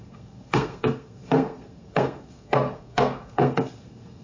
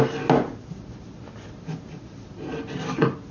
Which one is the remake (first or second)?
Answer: first